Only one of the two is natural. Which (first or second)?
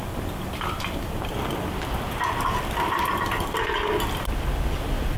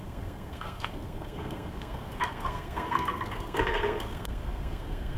first